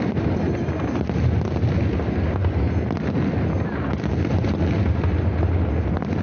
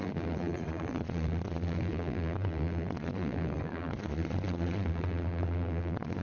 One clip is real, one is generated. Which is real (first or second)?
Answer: first